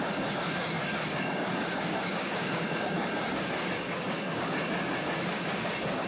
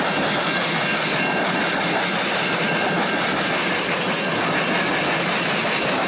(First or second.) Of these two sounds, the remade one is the first